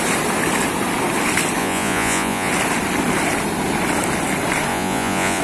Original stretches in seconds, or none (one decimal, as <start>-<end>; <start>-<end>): 0.0-1.6; 2.5-4.7